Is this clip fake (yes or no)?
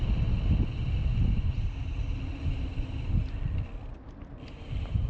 no